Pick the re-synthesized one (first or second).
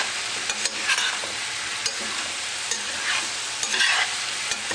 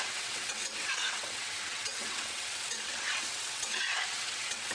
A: second